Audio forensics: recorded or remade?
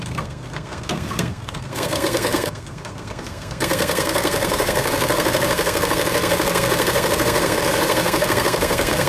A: remade